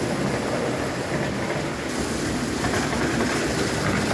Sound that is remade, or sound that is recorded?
recorded